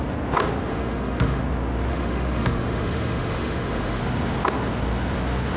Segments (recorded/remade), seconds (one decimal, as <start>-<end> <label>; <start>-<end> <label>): 0.0-0.7 recorded; 0.7-1.4 remade; 1.4-1.9 recorded; 1.9-4.0 remade; 4.0-5.6 recorded